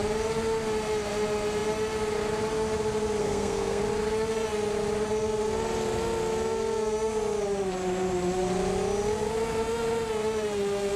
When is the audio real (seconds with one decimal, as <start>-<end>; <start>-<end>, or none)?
0.0-3.2; 3.8-11.0